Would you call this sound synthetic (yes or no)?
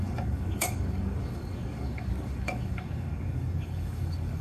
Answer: yes